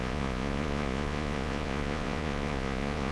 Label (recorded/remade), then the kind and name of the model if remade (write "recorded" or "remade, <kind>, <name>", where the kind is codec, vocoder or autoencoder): remade, vocoder, Vocos